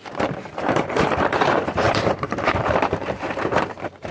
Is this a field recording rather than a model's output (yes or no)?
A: no